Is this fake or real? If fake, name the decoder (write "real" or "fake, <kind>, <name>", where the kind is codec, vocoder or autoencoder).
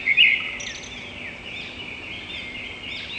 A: real